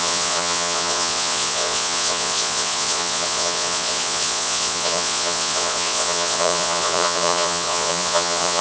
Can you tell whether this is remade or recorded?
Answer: remade